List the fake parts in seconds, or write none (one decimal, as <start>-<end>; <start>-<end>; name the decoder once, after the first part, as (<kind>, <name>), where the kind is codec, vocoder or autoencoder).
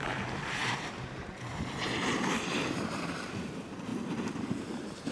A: 0.0-3.9 (vocoder, BigVGAN v2)